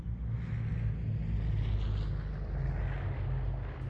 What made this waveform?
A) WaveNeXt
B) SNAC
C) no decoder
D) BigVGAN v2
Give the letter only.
C